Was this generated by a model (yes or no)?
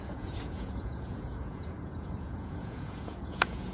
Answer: yes